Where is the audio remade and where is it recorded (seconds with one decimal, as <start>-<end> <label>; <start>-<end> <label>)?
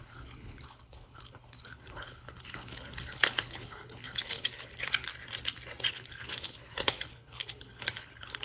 0.0-5.1 remade; 5.1-5.9 recorded; 5.9-8.4 remade